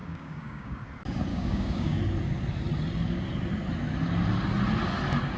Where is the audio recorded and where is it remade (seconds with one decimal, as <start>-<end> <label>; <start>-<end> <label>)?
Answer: 0.0-0.8 remade; 0.8-1.3 recorded; 1.3-2.0 remade; 2.0-5.4 recorded